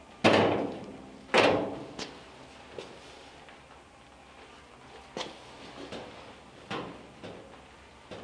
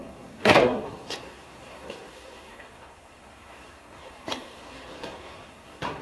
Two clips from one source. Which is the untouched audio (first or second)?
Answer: first